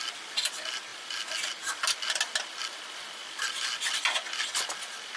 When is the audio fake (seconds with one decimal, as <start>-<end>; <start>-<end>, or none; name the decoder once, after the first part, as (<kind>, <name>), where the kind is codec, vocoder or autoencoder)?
none